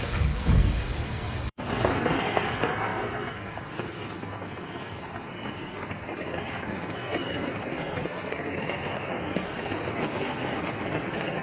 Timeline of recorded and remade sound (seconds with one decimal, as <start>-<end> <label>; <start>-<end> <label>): 0.0-11.4 remade